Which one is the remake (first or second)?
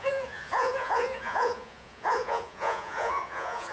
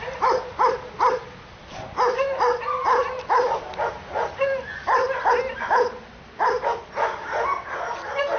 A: first